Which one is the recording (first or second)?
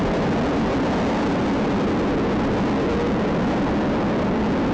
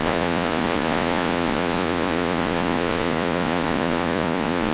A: first